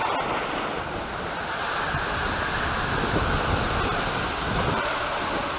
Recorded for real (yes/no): yes